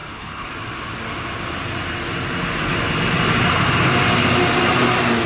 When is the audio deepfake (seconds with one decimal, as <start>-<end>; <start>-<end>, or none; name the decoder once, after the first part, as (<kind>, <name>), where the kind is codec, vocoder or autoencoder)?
0.0-0.5 (codec, HILCodec)

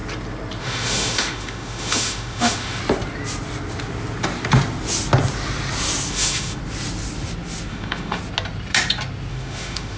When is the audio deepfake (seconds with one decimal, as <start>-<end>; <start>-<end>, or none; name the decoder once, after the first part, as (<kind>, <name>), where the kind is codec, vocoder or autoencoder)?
0.6-2.8 (autoencoder, DAC-VAE); 6.1-6.6; 7.7-8.2; 9.3-10.0

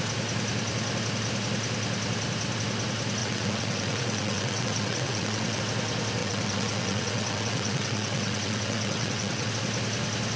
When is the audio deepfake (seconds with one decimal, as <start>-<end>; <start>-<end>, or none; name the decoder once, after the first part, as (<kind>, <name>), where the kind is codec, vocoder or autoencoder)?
3.2-5.6 (vocoder, WaveNeXt); 6.2-9.5

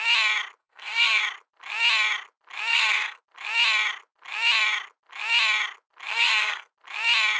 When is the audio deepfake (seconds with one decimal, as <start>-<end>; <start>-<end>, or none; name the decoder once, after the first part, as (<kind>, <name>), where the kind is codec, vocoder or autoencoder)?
0.6-1.2 (codec, SNAC); 2.7-3.2; 6.1-6.7

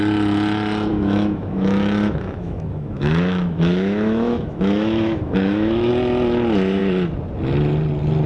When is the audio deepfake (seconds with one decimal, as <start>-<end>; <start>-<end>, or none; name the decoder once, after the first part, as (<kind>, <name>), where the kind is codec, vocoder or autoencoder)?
0.9-5.9 (autoencoder, DAC-VAE)

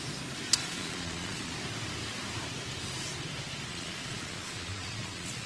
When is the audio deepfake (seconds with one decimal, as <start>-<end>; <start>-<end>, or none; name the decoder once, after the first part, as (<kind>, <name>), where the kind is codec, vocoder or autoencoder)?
0.6-1.5 (vocoder, Vocos); 3.7-5.5

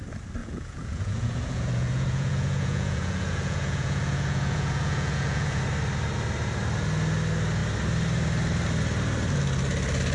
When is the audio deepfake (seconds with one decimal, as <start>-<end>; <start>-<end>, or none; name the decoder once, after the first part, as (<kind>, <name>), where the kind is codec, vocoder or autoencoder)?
0.4-5.6 (vocoder, Vocos)